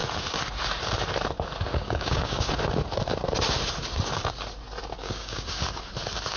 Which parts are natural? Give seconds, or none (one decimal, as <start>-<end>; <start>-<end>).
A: 0.0-1.7; 2.5-5.0; 5.6-6.4